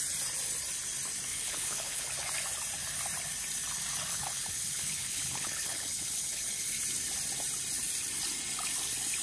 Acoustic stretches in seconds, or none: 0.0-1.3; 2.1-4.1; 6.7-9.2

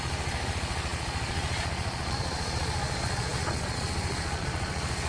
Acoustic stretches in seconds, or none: none